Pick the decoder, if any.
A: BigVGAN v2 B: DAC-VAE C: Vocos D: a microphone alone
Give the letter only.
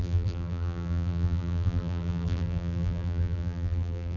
A